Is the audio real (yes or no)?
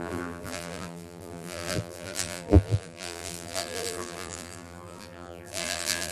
no